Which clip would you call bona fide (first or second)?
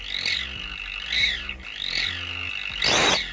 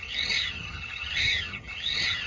first